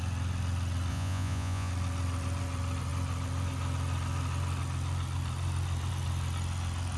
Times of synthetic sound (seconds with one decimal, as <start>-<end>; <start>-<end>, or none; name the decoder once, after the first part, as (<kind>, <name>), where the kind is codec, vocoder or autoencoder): 0.9-1.7 (vocoder, Vocos)